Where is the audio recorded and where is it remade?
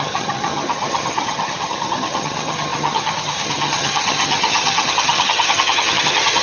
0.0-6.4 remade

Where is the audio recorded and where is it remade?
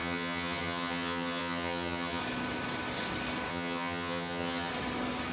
0.0-2.2 remade; 2.2-3.5 recorded; 3.5-4.7 remade; 4.7-5.3 recorded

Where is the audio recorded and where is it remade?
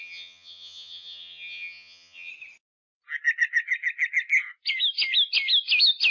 0.0-2.3 remade; 2.3-6.1 recorded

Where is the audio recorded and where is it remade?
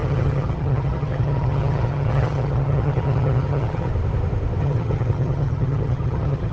0.0-3.9 remade; 3.9-4.6 recorded; 4.6-6.5 remade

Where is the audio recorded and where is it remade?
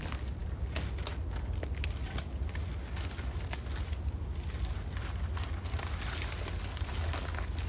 0.0-7.7 recorded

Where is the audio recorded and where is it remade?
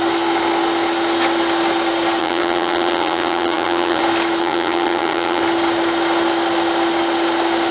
0.0-2.2 recorded; 2.2-4.0 remade; 4.0-4.4 recorded; 4.4-5.4 remade; 5.4-7.7 recorded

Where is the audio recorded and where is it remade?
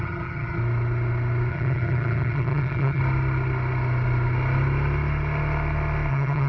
0.0-0.6 remade; 0.6-1.5 recorded; 1.5-3.0 remade; 3.0-6.1 recorded; 6.1-6.5 remade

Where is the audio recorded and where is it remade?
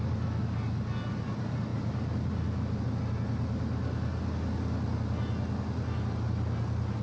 0.0-7.0 recorded